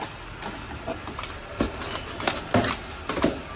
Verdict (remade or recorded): recorded